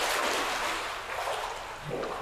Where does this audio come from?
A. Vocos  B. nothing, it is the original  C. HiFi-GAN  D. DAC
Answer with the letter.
B